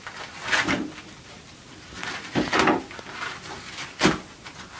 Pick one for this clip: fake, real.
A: real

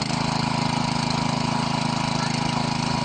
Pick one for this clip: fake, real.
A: real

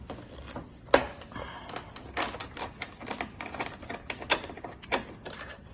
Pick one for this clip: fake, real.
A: real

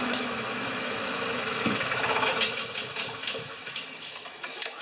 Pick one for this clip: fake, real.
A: fake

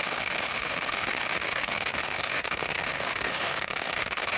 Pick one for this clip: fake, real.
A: fake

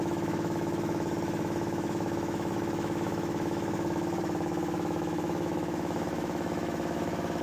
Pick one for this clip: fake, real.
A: fake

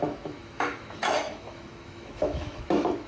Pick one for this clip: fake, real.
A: fake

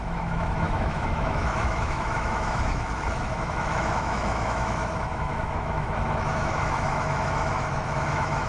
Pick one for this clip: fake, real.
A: fake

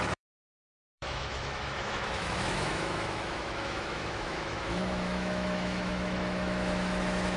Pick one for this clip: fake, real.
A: fake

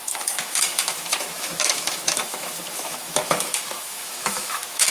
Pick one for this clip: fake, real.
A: fake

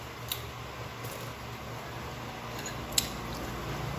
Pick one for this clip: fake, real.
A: real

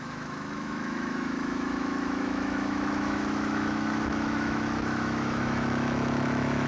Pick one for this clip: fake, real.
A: fake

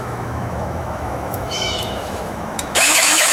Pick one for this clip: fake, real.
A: fake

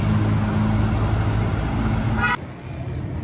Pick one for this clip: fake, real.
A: real